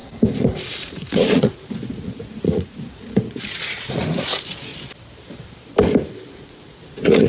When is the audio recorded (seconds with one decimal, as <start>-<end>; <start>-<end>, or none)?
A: 4.7-6.3